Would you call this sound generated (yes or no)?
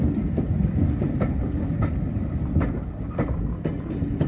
no